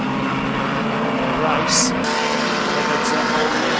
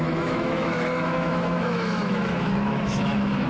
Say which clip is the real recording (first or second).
first